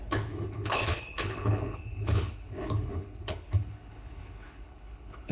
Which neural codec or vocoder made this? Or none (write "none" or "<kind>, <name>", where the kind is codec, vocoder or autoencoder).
codec, HILCodec